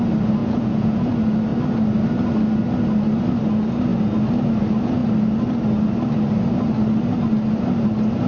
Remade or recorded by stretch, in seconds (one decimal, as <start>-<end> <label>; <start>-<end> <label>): 0.0-0.4 recorded; 0.4-1.1 remade; 1.1-8.3 recorded